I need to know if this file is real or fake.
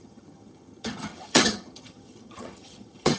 fake